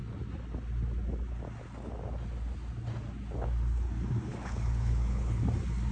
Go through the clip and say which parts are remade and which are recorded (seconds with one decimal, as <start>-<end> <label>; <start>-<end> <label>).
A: 0.0-4.3 recorded; 4.3-5.4 remade; 5.4-5.9 recorded